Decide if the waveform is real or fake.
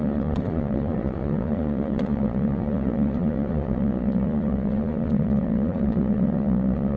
fake